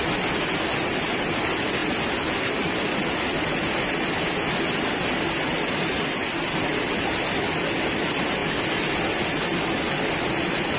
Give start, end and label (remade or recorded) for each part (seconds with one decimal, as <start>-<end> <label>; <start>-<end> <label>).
0.0-10.8 recorded